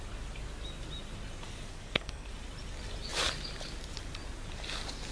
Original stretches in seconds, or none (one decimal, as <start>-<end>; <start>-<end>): 0.0-1.7; 2.3-5.1